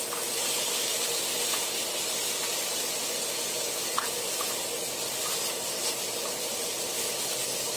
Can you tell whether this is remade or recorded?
recorded